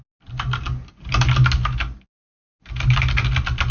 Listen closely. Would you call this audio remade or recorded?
recorded